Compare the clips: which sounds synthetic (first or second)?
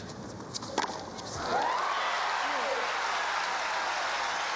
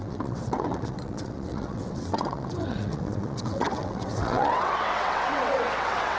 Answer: second